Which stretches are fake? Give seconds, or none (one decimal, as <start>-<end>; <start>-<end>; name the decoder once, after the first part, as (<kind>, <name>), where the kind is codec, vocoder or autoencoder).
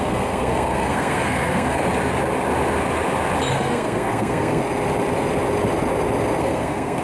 0.0-1.8 (codec, SNAC); 3.5-4.6; 6.4-7.0